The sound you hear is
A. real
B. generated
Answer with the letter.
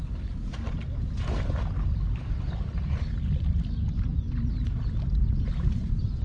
A